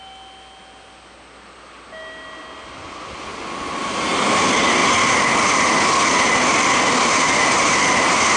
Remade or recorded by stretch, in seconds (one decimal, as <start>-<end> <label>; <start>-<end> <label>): 0.0-8.4 recorded